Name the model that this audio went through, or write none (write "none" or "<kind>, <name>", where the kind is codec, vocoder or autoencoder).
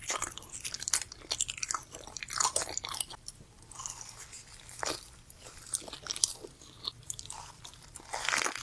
vocoder, BigVGAN v2